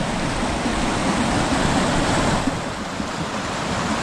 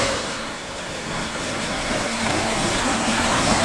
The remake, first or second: second